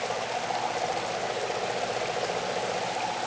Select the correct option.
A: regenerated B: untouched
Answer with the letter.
B